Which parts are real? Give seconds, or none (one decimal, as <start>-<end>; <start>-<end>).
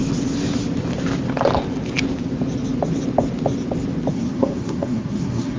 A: 0.0-4.1